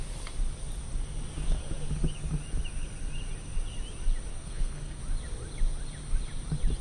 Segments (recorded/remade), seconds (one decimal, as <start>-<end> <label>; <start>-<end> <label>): 0.0-4.3 recorded; 4.3-5.0 remade; 5.0-6.8 recorded